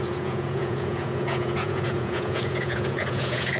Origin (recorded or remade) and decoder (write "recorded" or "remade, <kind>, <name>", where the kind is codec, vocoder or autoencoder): remade, vocoder, Vocos